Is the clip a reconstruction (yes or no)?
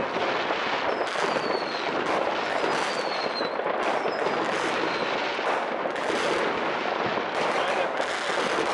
no